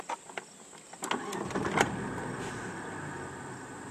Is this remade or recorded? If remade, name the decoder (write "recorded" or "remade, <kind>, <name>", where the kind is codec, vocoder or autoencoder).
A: recorded